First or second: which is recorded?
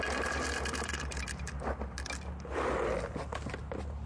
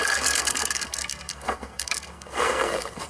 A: first